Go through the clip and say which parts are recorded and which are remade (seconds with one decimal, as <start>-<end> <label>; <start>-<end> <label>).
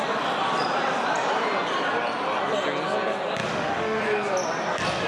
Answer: 0.0-3.4 recorded; 3.4-4.0 remade; 4.0-5.1 recorded